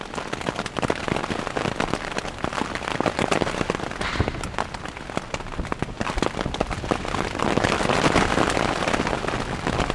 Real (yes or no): yes